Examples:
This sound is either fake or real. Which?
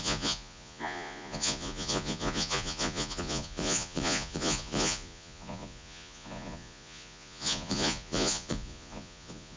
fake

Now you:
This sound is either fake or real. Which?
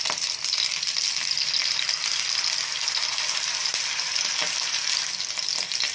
real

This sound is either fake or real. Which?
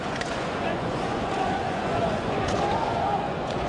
fake